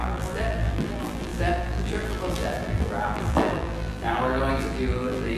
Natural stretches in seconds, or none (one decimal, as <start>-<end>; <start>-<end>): none